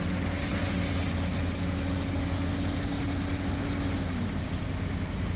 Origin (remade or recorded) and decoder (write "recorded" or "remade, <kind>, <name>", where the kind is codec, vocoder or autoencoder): recorded